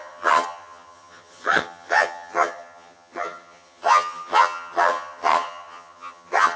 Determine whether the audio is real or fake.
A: fake